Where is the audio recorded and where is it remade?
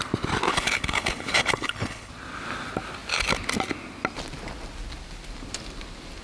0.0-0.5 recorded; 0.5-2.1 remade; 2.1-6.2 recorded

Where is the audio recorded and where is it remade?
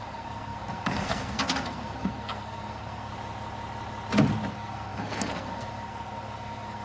0.0-3.1 remade; 3.1-4.5 recorded; 4.5-6.8 remade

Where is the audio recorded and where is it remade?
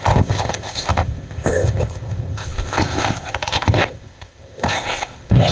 0.0-5.5 remade